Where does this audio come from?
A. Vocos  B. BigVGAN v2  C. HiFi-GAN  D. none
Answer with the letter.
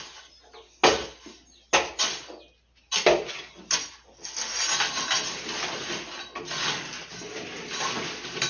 D